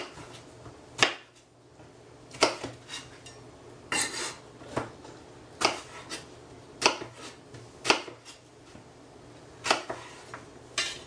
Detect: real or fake real